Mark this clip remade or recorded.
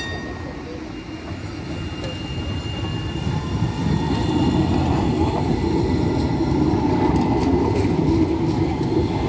recorded